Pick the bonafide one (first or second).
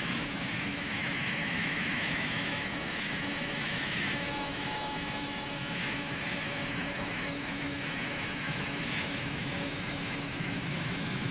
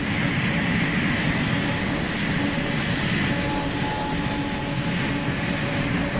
second